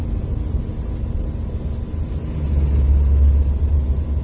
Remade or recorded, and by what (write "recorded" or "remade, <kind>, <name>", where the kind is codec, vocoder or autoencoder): recorded